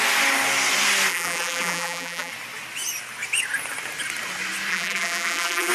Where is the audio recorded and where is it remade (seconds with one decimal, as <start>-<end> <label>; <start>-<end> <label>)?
0.0-1.1 recorded; 1.1-2.3 remade; 2.3-4.7 recorded; 4.7-5.7 remade